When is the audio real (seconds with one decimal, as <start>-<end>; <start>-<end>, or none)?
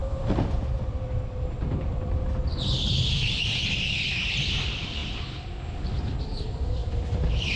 5.0-6.2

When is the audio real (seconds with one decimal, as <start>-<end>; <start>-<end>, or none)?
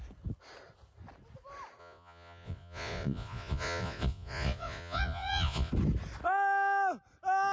0.0-1.8; 5.7-7.5